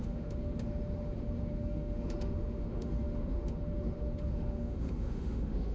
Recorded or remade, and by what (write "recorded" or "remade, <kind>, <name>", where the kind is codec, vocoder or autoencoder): remade, autoencoder, DAC-VAE